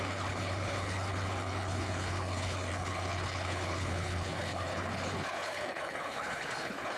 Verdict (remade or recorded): remade